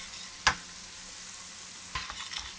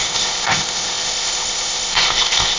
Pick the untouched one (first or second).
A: first